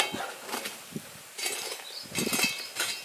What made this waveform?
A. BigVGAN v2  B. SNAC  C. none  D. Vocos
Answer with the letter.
C